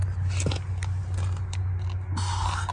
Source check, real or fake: real